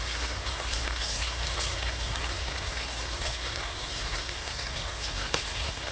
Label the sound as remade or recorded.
remade